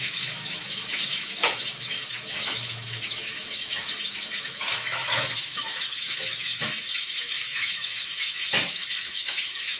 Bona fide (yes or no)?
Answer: no